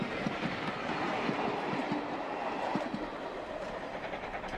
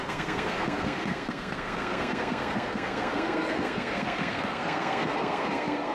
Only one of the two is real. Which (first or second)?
first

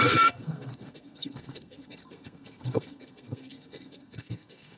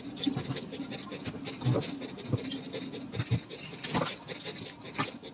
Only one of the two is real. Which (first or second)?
second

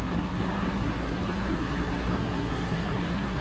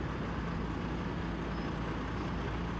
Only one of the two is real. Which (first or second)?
second